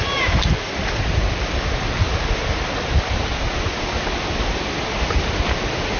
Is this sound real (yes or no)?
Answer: yes